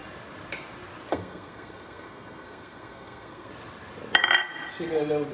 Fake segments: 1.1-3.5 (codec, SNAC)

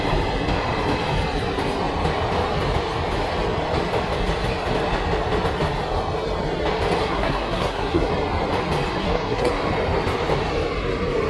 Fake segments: 7.0-8.1 (codec, SNAC); 9.0-9.5